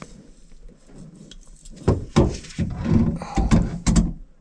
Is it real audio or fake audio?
real